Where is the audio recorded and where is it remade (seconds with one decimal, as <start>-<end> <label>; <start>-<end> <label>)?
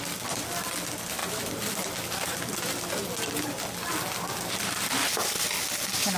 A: 0.0-6.2 recorded